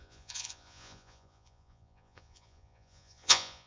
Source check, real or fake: fake